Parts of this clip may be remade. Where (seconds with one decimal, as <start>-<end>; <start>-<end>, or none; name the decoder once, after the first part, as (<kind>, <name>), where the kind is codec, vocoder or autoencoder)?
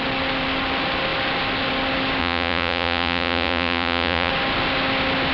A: 2.2-4.3 (vocoder, Vocos)